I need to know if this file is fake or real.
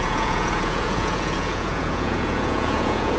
fake